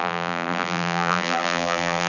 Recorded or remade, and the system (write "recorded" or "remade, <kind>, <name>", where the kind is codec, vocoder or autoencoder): remade, vocoder, BigVGAN v2